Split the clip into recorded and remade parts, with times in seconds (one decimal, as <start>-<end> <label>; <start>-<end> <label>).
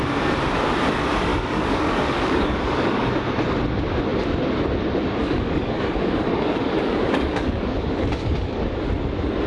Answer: 0.0-1.3 recorded; 1.3-3.1 remade; 3.1-5.2 recorded; 5.2-8.9 remade; 8.9-9.5 recorded